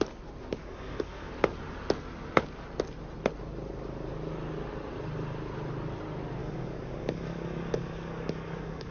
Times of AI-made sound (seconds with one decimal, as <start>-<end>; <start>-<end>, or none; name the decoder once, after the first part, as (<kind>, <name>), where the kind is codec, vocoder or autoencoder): 0.6-1.3 (codec, DAC); 6.4-8.9